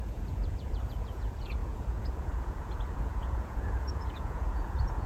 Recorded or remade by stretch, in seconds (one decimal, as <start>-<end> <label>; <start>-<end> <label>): 0.0-5.1 remade